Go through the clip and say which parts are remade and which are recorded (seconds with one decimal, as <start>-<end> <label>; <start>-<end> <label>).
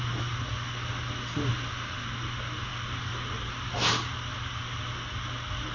0.0-5.7 recorded